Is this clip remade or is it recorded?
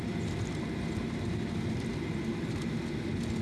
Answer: recorded